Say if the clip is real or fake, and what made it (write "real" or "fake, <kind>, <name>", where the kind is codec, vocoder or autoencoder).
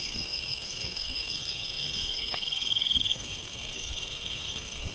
fake, codec, SNAC